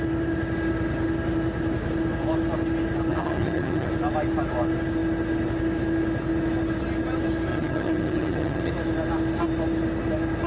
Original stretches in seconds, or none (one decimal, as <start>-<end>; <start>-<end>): 0.0-3.1; 3.9-7.5; 8.7-10.5

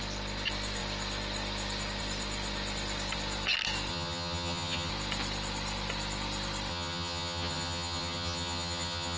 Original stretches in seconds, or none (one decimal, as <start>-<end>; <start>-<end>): 0.0-3.9; 4.9-6.7